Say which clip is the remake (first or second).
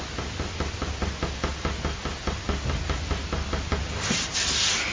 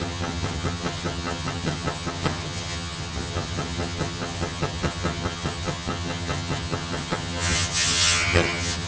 second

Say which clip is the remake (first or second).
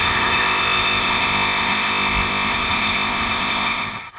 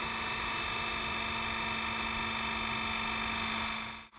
first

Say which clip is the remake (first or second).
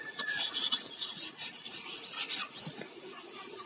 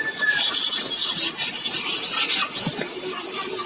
first